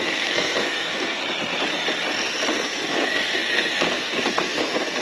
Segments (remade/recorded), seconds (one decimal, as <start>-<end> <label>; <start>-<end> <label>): 0.0-1.2 remade; 1.2-2.5 recorded; 2.5-5.0 remade